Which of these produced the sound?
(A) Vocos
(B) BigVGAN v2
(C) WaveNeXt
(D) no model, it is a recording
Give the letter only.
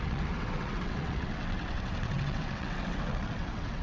C